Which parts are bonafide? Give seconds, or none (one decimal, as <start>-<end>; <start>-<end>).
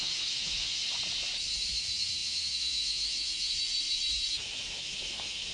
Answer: 0.8-1.8